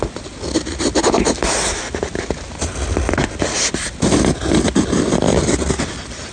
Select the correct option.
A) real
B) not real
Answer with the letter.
A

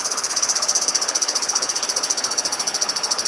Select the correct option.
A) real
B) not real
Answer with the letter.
B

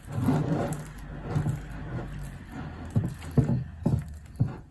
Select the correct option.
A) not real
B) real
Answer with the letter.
B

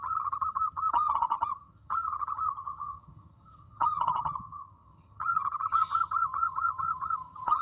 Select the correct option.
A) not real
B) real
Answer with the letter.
A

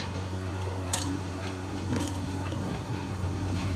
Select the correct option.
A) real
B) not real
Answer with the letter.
B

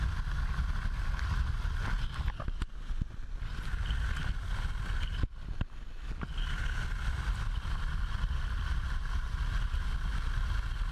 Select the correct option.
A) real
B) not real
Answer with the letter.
A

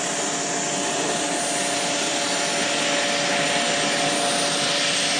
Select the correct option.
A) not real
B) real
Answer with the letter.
B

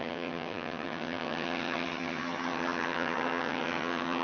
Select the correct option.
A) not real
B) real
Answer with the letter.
A